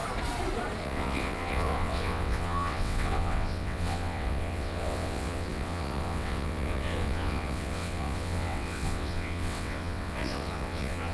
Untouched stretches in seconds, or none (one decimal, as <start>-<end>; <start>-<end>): 0.0-0.8